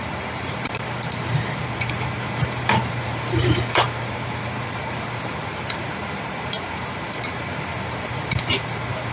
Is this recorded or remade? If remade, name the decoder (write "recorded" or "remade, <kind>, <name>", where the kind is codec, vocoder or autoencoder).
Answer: remade, vocoder, BigVGAN v2